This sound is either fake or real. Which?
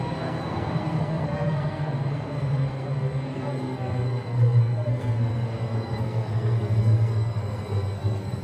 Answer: fake